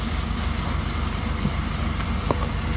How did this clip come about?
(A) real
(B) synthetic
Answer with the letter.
A